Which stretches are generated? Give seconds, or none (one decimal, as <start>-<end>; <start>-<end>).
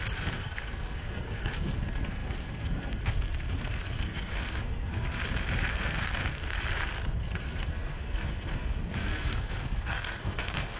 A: 0.0-5.2; 5.7-6.5; 7.2-10.8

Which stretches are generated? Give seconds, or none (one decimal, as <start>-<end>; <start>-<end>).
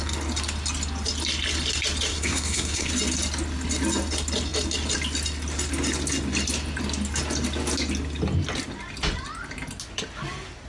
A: 2.1-2.9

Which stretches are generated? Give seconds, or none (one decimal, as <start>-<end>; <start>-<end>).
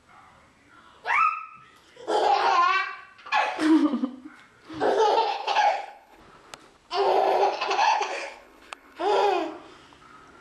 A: 5.3-6.2; 7.8-9.0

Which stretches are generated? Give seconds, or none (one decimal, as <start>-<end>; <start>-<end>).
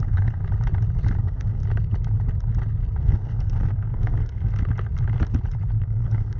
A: 0.0-0.4; 1.2-1.6; 3.0-4.5; 5.8-6.4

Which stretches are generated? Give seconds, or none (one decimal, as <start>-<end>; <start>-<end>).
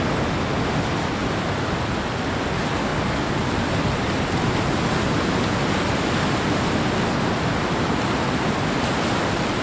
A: none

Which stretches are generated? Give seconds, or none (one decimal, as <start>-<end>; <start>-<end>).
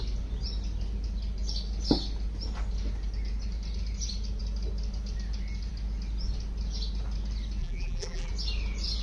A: 7.6-8.3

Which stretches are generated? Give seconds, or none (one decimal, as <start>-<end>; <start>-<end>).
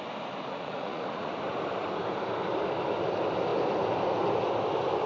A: 0.5-1.3